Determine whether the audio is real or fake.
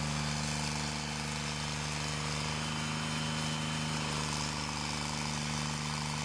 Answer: real